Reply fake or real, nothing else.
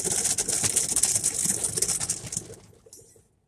real